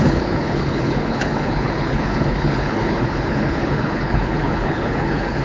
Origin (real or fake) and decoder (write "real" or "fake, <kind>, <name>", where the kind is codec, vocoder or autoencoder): fake, codec, HILCodec